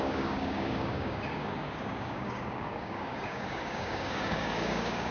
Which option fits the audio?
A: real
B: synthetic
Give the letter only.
B